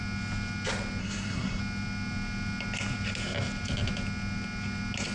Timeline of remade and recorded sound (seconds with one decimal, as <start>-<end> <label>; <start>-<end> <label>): 0.0-1.0 recorded; 1.0-1.6 remade; 1.6-5.1 recorded